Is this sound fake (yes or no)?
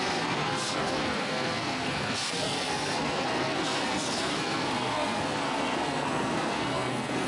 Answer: yes